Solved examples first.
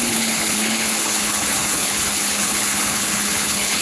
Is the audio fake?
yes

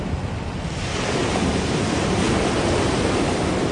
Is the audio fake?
no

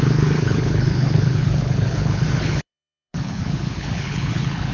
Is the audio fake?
yes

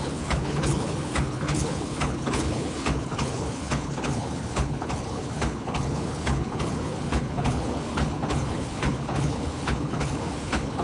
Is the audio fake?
yes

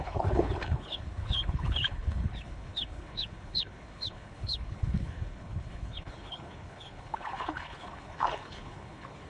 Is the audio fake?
yes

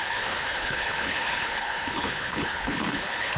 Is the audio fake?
yes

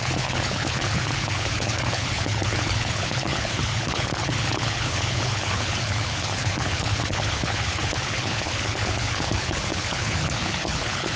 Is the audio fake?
yes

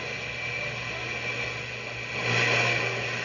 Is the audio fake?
no